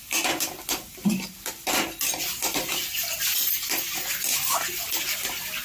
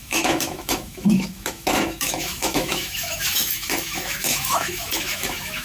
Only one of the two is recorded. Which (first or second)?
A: first